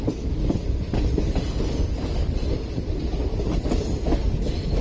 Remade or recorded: recorded